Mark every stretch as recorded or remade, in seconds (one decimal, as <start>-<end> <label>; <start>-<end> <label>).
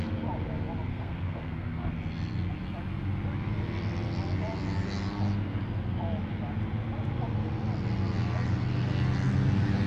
0.0-0.9 recorded; 0.9-1.9 remade; 1.9-9.9 recorded